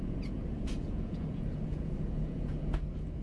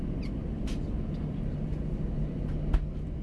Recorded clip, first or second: second